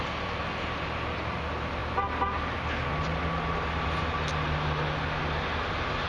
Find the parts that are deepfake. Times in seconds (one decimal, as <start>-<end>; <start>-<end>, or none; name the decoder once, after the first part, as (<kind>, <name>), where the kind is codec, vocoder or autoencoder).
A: none